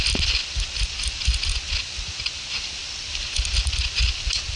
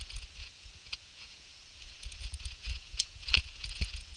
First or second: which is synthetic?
second